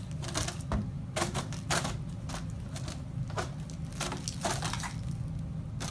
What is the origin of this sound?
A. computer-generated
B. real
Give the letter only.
B